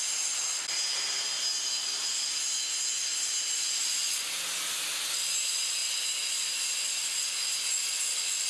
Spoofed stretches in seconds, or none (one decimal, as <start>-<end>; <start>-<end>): none